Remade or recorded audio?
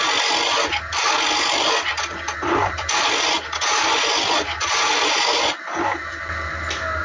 recorded